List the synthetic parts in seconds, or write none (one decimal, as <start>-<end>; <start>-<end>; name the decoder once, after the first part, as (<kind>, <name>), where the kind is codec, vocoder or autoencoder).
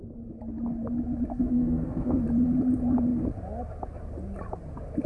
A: 1.3-2.2 (codec, SNAC)